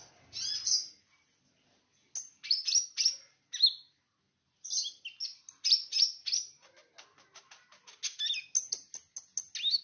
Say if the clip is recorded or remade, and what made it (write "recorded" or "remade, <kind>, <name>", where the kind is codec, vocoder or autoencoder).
recorded